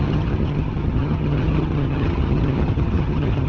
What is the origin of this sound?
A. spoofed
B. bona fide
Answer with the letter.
A